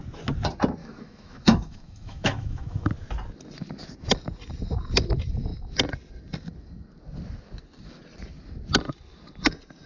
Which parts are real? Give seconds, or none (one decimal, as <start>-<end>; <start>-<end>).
0.0-0.8; 2.9-9.9

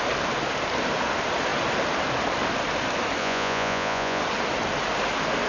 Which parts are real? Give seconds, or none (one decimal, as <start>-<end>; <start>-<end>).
0.0-3.2; 4.2-5.5

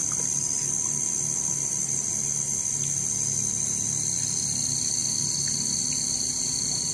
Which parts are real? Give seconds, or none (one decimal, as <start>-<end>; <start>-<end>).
0.0-6.9

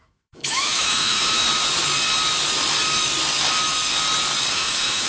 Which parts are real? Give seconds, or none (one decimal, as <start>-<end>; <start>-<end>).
1.4-4.5

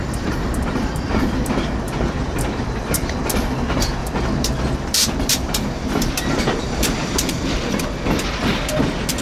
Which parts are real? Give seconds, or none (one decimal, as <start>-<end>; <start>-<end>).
3.2-4.0; 7.8-9.2

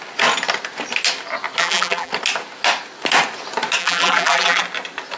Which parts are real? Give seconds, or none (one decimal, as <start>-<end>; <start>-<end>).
0.0-1.6; 2.1-3.8; 4.6-5.2